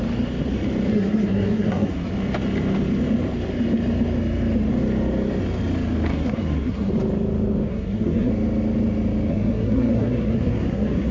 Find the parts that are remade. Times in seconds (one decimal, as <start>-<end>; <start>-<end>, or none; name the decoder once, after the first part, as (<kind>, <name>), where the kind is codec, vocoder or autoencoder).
0.9-2.1 (codec, SNAC); 6.1-6.9; 7.7-8.3; 9.3-11.1